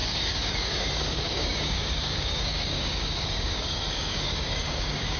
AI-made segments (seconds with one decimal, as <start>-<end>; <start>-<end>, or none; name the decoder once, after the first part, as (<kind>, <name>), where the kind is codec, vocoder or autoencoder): 0.0-5.2 (codec, DAC)